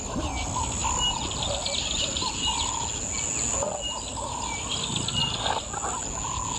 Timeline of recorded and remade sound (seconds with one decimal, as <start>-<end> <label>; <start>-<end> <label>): 0.0-6.6 recorded